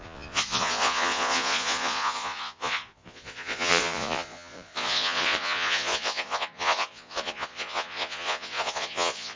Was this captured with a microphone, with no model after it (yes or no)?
no